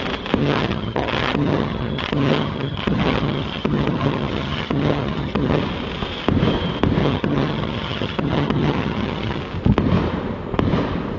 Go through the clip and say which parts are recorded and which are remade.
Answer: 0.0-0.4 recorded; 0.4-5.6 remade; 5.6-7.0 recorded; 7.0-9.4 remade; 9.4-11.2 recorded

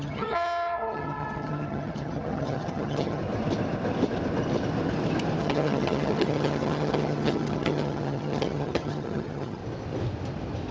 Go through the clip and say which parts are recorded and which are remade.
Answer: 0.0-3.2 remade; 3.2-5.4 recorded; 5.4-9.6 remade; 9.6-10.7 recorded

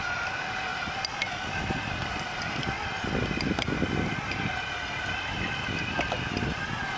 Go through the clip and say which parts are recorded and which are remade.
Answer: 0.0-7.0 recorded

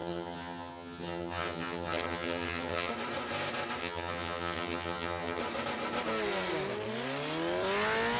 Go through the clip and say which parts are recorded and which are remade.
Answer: 0.0-2.9 remade; 2.9-3.8 recorded; 3.8-5.4 remade; 5.4-8.2 recorded